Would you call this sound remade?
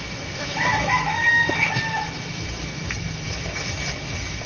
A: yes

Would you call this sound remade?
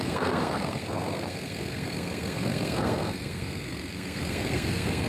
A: yes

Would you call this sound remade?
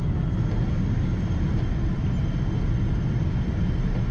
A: no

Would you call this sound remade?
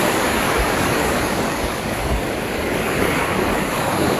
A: yes